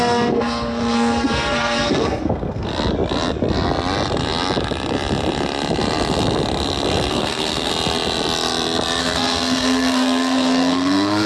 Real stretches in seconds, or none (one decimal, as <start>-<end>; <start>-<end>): 2.7-7.1; 7.7-9.0